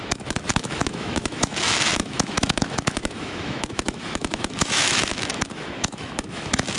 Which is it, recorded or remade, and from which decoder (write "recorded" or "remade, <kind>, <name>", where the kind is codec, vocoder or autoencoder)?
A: remade, autoencoder, DAC-VAE